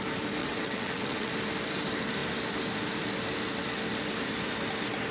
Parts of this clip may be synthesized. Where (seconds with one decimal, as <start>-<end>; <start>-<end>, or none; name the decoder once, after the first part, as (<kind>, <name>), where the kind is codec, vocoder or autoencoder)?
0.4-1.3 (vocoder, WaveNeXt)